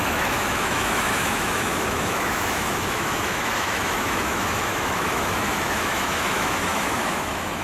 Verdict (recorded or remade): remade